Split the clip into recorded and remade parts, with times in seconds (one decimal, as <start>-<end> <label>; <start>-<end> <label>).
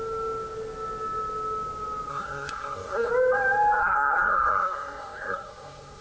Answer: 0.0-2.1 recorded; 2.1-3.1 remade; 3.1-3.8 recorded; 3.8-6.0 remade